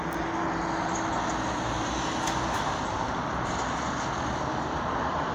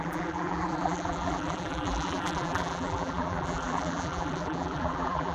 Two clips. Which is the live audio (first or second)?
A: first